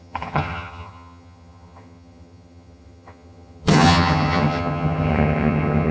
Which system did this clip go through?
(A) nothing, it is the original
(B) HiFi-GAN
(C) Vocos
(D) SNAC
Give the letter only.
B